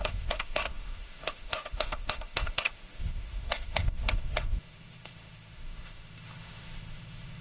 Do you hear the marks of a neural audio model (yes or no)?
yes